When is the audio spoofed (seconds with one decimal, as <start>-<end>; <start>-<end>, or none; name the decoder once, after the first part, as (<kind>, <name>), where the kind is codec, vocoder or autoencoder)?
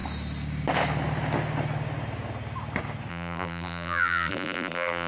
3.1-5.1 (vocoder, BigVGAN v2)